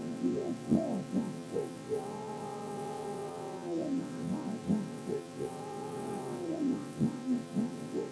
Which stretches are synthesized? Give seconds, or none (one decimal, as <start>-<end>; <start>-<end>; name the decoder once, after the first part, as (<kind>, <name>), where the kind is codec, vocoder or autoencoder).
0.0-8.1 (vocoder, WaveNeXt)